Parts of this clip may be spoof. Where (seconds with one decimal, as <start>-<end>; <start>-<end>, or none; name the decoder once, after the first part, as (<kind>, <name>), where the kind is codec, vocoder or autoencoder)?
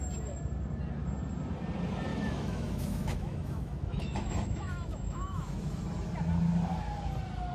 2.1-5.8 (autoencoder, DAC-VAE)